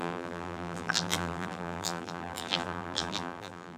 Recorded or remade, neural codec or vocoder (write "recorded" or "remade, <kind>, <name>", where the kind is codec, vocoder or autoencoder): remade, vocoder, BigVGAN v2